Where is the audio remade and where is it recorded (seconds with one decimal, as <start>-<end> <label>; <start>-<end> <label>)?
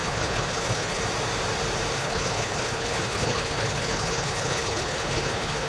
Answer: 0.0-1.0 remade; 1.0-2.0 recorded; 2.0-5.7 remade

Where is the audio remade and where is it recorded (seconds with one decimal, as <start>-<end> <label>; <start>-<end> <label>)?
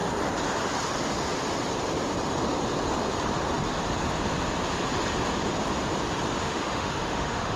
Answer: 0.0-6.4 recorded; 6.4-7.6 remade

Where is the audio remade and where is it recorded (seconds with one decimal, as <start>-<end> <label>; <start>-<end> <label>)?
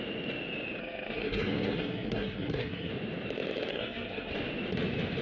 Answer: 0.0-0.8 recorded; 0.8-2.9 remade; 2.9-3.7 recorded; 3.7-4.3 remade; 4.3-5.2 recorded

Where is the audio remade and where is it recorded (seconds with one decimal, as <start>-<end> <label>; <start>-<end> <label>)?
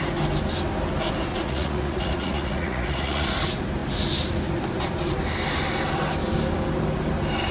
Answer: 0.0-1.3 recorded; 1.3-3.3 remade; 3.3-7.5 recorded